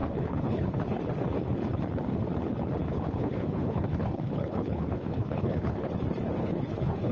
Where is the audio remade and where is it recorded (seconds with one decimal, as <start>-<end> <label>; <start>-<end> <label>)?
0.0-1.0 remade; 1.0-2.8 recorded; 2.8-5.9 remade; 5.9-6.4 recorded; 6.4-7.1 remade